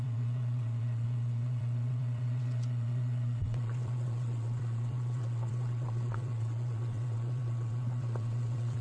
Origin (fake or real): fake